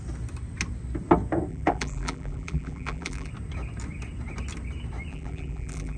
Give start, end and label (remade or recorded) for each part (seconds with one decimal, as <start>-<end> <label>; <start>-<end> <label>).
0.0-1.5 recorded; 1.5-3.3 remade; 3.3-5.1 recorded; 5.1-6.0 remade